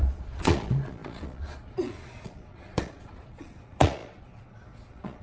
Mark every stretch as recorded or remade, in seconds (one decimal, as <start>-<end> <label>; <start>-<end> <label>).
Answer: 0.0-5.2 remade